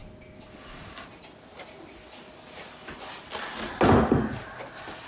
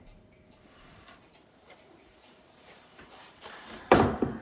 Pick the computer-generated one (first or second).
second